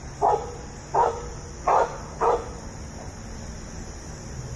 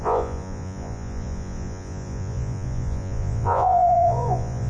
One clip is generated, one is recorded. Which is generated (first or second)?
second